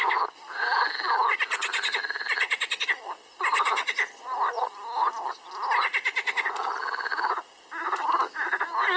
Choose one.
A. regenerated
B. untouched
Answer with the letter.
B